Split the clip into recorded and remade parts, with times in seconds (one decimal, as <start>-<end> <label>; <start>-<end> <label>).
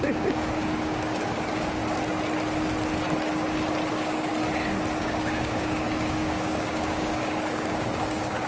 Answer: 0.0-1.8 remade; 1.8-3.9 recorded; 3.9-4.3 remade; 4.3-5.0 recorded; 5.0-8.5 remade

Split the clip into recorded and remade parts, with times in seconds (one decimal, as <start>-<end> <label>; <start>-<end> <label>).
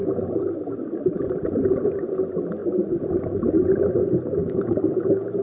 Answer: 0.0-4.4 recorded; 4.4-5.0 remade; 5.0-5.4 recorded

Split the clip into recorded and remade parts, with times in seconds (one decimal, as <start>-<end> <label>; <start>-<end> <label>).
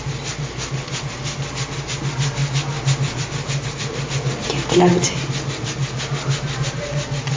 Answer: 0.0-7.4 recorded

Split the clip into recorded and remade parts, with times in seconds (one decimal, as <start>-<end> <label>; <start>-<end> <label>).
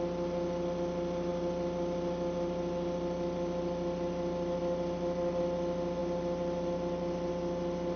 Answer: 0.0-8.0 recorded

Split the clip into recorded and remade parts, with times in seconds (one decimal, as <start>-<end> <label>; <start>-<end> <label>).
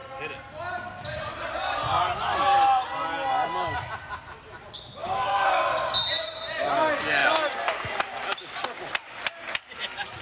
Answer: 0.0-5.0 recorded; 5.0-5.6 remade; 5.6-10.2 recorded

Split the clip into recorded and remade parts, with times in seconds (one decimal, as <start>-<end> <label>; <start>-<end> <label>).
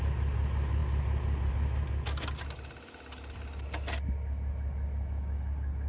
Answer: 0.0-5.9 recorded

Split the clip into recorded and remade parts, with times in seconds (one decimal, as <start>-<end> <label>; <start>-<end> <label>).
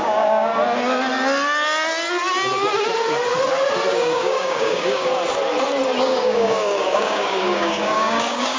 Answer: 0.0-0.5 remade; 0.5-3.9 recorded; 3.9-5.1 remade; 5.1-6.0 recorded; 6.0-8.6 remade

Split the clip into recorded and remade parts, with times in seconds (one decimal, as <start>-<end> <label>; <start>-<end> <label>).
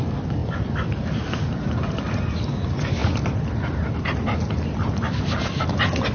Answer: 0.0-6.1 recorded